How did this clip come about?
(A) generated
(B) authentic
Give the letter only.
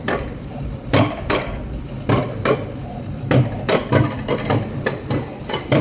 A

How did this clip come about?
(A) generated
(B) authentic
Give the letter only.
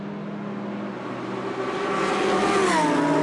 B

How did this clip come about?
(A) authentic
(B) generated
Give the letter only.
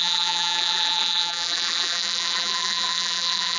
B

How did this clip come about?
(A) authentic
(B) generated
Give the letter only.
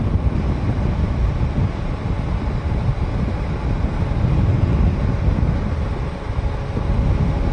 A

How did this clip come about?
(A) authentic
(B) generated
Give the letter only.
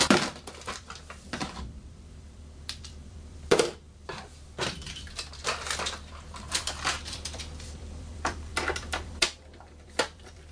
B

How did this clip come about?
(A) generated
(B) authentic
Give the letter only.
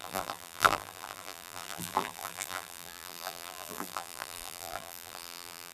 A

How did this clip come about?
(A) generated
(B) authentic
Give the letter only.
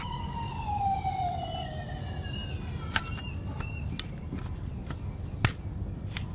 B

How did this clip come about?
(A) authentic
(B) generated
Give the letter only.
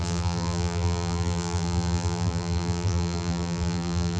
B